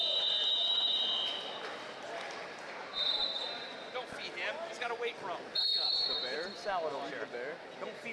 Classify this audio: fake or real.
fake